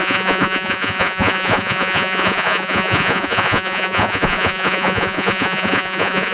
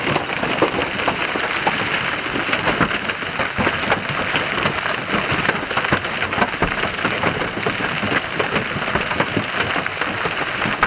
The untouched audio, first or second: second